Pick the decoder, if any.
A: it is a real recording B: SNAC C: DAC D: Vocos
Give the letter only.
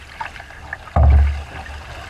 A